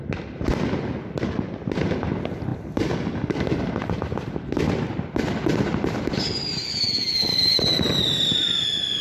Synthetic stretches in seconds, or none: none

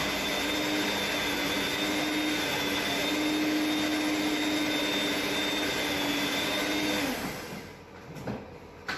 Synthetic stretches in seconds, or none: none